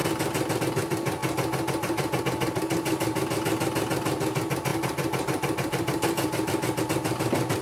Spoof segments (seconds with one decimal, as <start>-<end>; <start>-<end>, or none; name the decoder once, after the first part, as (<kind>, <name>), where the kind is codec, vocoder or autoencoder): 0.0-0.6 (vocoder, BigVGAN v2); 1.2-2.2; 4.7-6.8